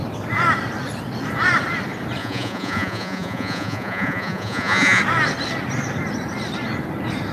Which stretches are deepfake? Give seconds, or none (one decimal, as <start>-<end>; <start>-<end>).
2.2-5.0